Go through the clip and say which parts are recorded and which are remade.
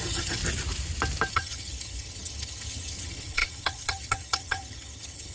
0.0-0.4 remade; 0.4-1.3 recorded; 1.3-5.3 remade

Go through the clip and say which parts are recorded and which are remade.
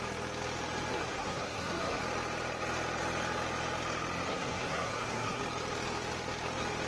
0.0-0.9 recorded; 0.9-2.0 remade; 2.0-4.3 recorded; 4.3-5.4 remade; 5.4-6.9 recorded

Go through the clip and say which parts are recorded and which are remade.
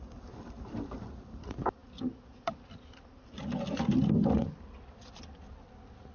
0.0-6.1 recorded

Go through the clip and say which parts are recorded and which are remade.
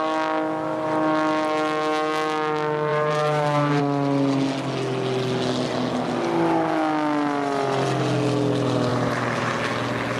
0.0-2.9 recorded; 2.9-3.8 remade; 3.8-8.9 recorded; 8.9-9.5 remade; 9.5-10.2 recorded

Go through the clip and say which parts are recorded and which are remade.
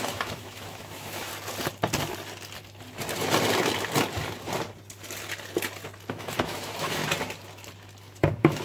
0.0-1.3 remade; 1.3-6.1 recorded; 6.1-7.0 remade; 7.0-8.2 recorded; 8.2-8.6 remade